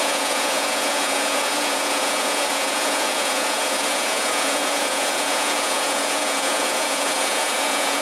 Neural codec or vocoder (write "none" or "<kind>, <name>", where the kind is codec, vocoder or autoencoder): vocoder, Vocos